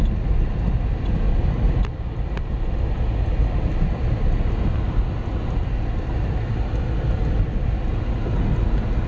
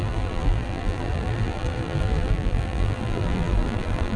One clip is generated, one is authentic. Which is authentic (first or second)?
first